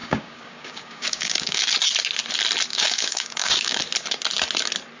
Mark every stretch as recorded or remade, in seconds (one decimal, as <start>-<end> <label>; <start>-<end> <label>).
0.0-1.6 remade; 1.6-2.7 recorded; 2.7-3.8 remade; 3.8-5.0 recorded